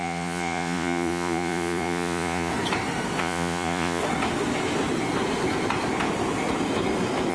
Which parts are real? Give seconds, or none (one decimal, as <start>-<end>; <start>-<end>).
2.5-3.2; 4.0-7.3